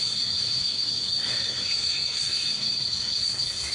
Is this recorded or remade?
remade